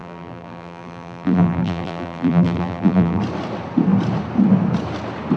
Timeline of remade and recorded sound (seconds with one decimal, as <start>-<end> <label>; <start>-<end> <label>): 0.0-3.2 remade; 3.2-5.4 recorded